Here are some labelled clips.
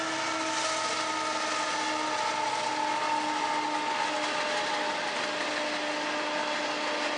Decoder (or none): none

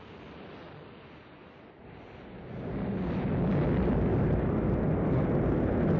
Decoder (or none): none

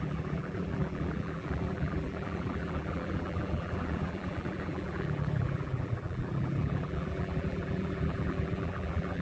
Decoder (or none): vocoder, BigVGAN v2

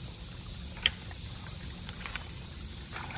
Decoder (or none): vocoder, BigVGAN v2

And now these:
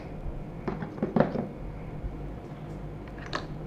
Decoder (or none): vocoder, BigVGAN v2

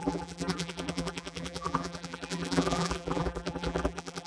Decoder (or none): vocoder, BigVGAN v2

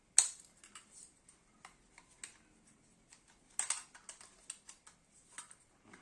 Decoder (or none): none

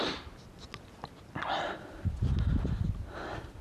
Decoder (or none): none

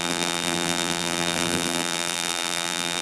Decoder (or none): vocoder, BigVGAN v2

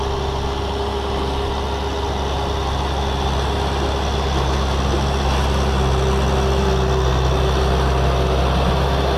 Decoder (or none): none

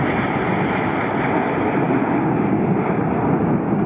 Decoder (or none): none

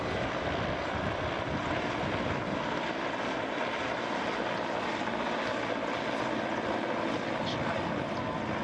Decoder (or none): none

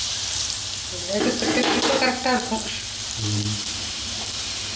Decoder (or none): vocoder, BigVGAN v2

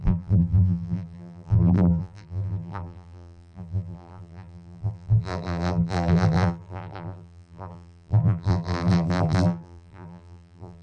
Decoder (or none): vocoder, BigVGAN v2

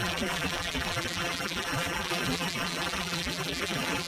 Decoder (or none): vocoder, BigVGAN v2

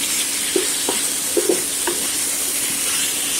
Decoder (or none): vocoder, BigVGAN v2